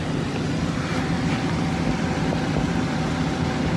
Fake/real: real